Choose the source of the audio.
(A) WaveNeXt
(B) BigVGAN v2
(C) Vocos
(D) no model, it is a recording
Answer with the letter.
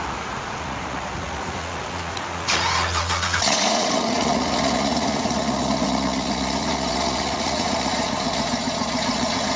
C